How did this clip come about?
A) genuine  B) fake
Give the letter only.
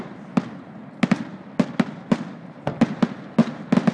A